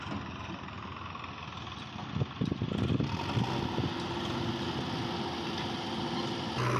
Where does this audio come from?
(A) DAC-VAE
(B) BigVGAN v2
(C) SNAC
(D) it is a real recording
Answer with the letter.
D